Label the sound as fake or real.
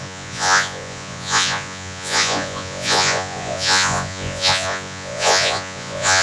fake